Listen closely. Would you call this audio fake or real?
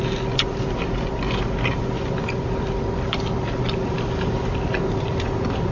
real